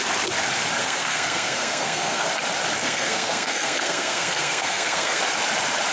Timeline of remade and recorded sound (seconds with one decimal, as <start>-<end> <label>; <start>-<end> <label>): 0.0-0.8 recorded; 0.8-2.3 remade; 2.3-2.8 recorded; 2.8-5.2 remade; 5.2-5.9 recorded